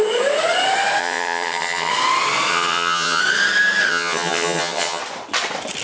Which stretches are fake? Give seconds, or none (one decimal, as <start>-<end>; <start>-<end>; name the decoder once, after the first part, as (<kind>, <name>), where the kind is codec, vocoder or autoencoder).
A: 1.0-1.9 (vocoder, HiFi-GAN); 2.5-3.2; 3.9-5.0